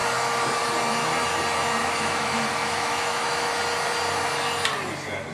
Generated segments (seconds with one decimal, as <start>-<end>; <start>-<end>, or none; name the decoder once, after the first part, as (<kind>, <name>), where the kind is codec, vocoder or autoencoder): 1.8-3.5 (autoencoder, DAC-VAE)